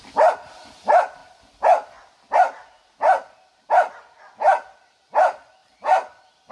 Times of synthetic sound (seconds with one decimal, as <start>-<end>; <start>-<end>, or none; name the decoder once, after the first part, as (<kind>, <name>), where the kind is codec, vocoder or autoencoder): 0.0-1.2 (vocoder, BigVGAN v2); 3.7-6.5